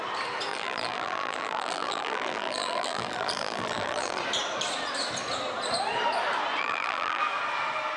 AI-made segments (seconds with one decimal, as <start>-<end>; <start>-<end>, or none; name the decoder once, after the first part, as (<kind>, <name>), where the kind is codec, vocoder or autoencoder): 0.5-4.2 (vocoder, BigVGAN v2); 6.6-7.2